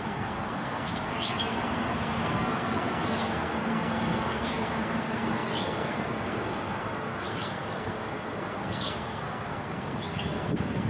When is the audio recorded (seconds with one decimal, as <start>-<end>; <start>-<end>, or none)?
none